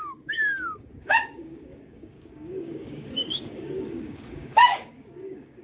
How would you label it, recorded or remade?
remade